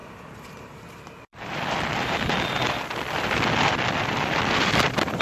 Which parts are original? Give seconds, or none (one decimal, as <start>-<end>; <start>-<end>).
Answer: none